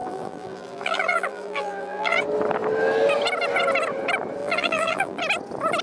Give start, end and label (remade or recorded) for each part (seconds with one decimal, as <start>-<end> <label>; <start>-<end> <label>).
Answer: 0.0-2.2 remade; 2.2-4.4 recorded; 4.4-5.2 remade; 5.2-5.8 recorded